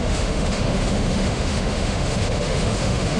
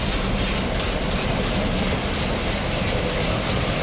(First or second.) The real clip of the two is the second